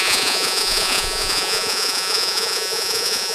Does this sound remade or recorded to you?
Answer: remade